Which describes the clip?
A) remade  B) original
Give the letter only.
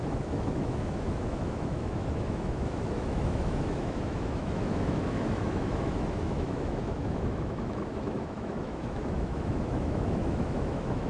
A